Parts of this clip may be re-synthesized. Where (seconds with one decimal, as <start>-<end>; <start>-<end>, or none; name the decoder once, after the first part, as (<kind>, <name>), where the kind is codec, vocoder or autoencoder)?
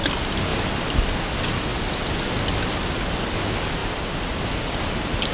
3.8-5.3 (vocoder, BigVGAN v2)